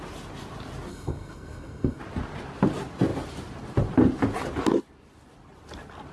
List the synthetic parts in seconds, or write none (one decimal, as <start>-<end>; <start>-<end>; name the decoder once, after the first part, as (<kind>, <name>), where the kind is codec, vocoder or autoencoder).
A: 0.9-2.0 (codec, SNAC)